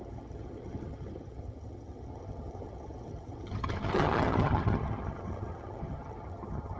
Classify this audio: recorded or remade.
remade